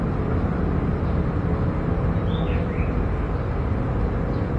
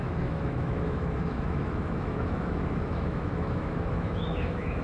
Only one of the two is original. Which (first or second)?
first